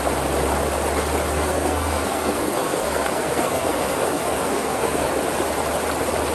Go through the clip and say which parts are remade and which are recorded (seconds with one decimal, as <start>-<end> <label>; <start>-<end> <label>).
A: 0.0-1.3 recorded; 1.3-5.1 remade; 5.1-6.3 recorded